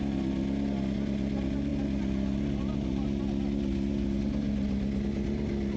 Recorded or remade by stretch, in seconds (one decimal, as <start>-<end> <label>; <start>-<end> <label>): 0.0-5.8 recorded